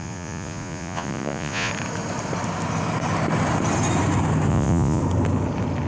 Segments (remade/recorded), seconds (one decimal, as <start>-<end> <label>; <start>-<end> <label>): 0.0-1.7 remade; 1.7-4.5 recorded; 4.5-5.0 remade; 5.0-5.9 recorded